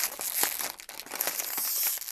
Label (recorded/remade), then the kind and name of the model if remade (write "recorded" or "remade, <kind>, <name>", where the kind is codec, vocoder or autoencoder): recorded